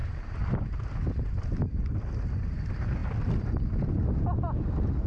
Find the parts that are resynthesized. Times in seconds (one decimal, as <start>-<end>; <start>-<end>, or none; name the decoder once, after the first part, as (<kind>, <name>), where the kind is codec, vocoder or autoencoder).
0.0-0.7 (vocoder, BigVGAN v2)